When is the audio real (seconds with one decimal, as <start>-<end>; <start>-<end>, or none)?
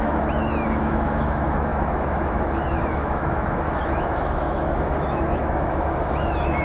none